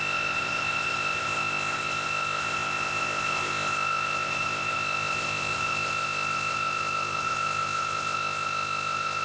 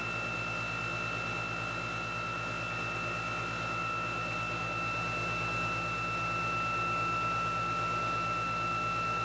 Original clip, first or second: second